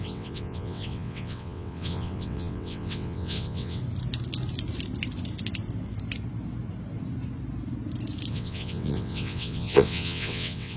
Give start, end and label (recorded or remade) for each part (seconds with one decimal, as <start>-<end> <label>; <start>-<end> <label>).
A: 0.0-3.8 remade; 3.8-8.3 recorded; 8.3-10.8 remade